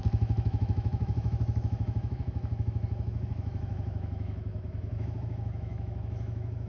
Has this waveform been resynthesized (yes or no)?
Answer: yes